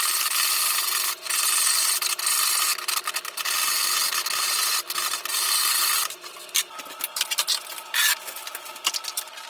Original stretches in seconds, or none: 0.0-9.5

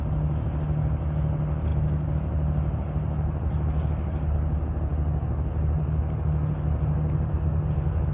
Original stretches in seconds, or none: 0.0-8.1

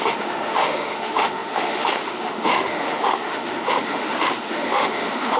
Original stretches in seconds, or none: none

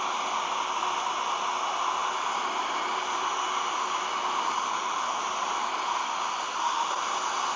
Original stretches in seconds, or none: 0.0-4.5; 5.2-6.0; 6.9-7.6